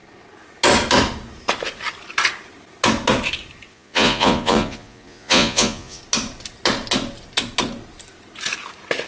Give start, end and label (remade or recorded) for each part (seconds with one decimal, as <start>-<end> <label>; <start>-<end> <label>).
0.0-3.7 recorded; 3.7-6.0 remade; 6.0-9.1 recorded